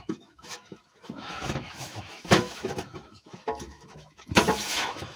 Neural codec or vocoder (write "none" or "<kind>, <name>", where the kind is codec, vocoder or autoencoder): autoencoder, DAC-VAE